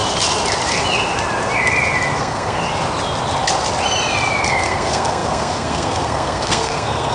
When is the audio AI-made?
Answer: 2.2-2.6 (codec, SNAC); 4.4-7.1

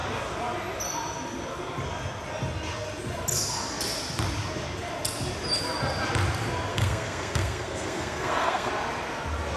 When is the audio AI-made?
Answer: 6.7-8.7 (codec, SNAC)

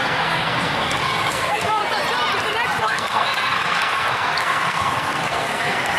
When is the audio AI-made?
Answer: 0.0-1.8 (codec, SNAC); 2.8-6.0

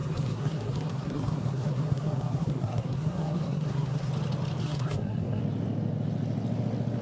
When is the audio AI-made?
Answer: 0.0-4.1 (codec, SNAC); 4.6-5.4

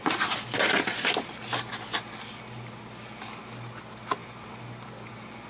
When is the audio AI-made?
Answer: none